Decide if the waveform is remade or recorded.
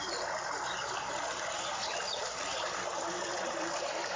recorded